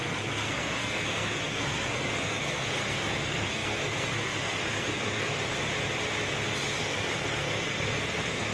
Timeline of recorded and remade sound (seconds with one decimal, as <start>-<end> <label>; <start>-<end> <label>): 0.0-5.5 remade; 5.5-6.8 recorded; 6.8-8.5 remade